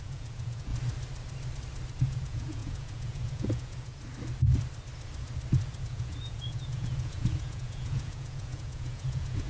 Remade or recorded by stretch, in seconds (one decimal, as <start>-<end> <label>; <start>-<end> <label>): 0.0-0.7 remade; 0.7-1.9 recorded; 1.9-3.9 remade; 3.9-5.8 recorded; 5.8-9.5 remade